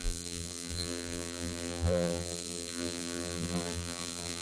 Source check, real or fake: fake